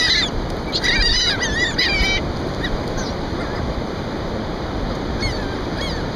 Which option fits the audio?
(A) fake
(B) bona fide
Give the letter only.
B